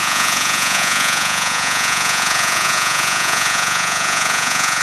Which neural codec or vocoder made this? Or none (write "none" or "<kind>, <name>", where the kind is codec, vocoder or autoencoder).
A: vocoder, Vocos